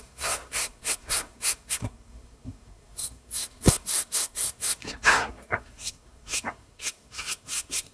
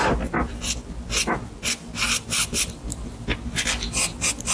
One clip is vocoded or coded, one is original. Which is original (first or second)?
second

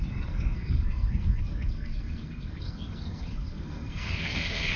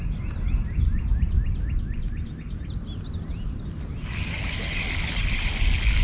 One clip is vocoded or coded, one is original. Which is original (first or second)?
second